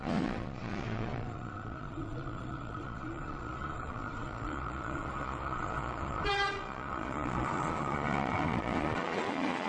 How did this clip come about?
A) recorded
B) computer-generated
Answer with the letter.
B